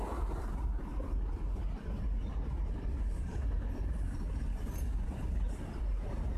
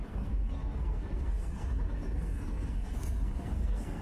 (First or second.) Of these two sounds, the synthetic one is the second